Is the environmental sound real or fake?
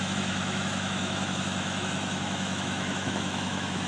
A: fake